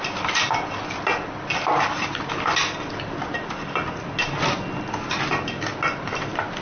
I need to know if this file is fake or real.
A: real